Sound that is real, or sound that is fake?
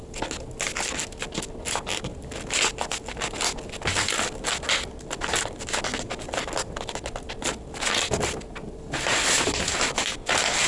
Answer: real